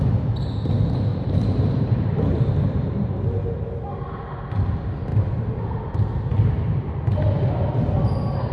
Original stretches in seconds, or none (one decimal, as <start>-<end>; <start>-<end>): 0.0-1.1; 3.1-5.1; 5.8-8.5